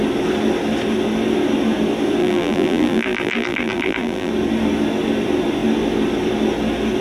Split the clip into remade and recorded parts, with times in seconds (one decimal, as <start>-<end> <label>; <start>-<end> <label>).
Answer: 0.0-2.2 recorded; 2.2-4.3 remade; 4.3-7.0 recorded